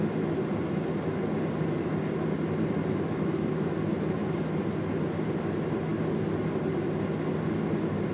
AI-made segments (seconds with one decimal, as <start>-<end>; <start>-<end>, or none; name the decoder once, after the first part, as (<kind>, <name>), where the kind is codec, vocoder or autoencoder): none